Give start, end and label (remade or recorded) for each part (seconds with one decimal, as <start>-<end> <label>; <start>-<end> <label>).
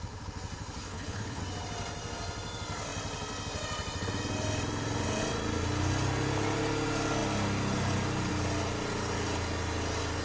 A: 0.0-0.8 recorded; 0.8-1.4 remade; 1.4-10.2 recorded